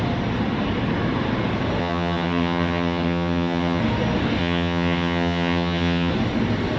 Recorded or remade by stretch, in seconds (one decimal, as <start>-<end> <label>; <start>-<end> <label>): 0.0-1.8 recorded; 1.8-3.8 remade; 3.8-4.4 recorded; 4.4-6.1 remade; 6.1-6.8 recorded